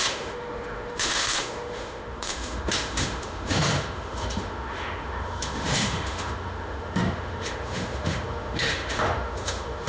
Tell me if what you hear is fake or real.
fake